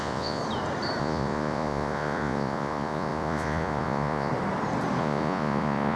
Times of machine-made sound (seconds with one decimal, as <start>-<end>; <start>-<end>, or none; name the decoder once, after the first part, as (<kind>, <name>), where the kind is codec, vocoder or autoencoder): 0.0-0.4 (vocoder, Vocos); 1.0-4.3; 5.0-6.0